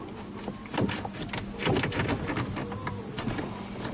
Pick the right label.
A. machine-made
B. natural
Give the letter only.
B